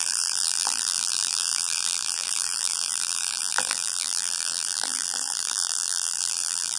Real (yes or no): no